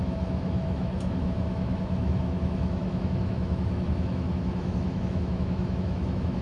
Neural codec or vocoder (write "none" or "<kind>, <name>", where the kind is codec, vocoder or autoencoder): autoencoder, DAC-VAE